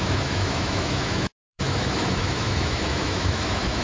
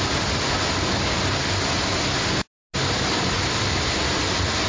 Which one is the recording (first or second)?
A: second